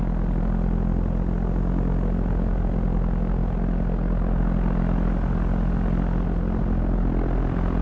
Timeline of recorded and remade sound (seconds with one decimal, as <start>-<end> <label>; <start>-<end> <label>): 0.0-7.8 recorded